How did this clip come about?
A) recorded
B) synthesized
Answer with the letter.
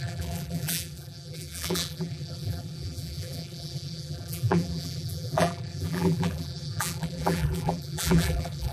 B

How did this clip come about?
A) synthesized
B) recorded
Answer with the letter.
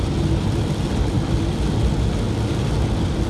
B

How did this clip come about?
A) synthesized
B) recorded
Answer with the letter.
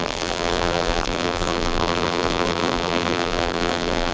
A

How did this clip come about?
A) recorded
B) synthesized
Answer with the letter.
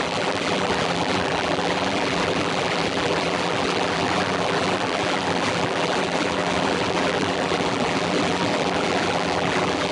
B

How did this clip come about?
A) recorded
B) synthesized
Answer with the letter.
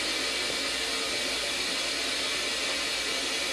A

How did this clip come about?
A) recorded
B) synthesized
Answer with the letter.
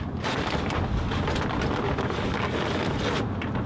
A